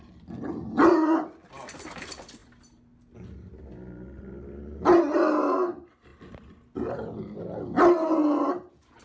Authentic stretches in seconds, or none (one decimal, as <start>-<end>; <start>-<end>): 0.0-9.0